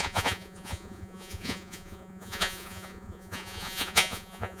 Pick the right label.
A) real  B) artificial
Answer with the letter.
B